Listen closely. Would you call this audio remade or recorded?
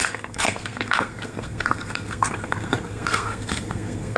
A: remade